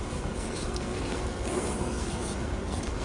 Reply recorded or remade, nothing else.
remade